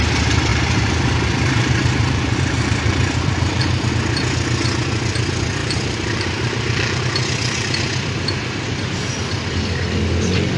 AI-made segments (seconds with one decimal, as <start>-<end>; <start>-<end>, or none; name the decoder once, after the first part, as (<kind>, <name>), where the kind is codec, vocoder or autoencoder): 0.5-3.9 (vocoder, BigVGAN v2); 5.6-7.0